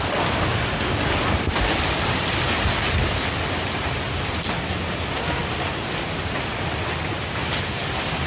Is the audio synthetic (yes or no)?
no